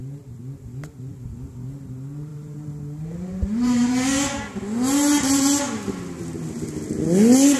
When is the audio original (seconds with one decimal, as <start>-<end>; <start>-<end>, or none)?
0.0-2.3; 3.9-7.6